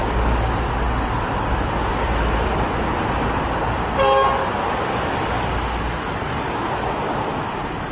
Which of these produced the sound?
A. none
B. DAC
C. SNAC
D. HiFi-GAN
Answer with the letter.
A